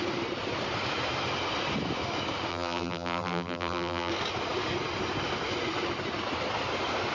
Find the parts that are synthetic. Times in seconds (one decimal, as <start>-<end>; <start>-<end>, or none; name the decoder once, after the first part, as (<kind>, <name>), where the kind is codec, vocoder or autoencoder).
2.5-4.1 (vocoder, BigVGAN v2)